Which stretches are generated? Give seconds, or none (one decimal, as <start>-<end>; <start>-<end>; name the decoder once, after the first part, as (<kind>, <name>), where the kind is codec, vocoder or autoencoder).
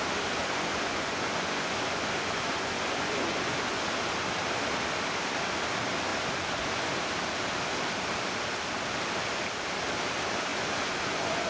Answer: 0.4-3.8 (vocoder, Vocos); 6.1-7.0; 10.5-11.5